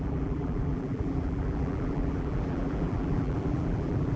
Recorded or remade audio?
remade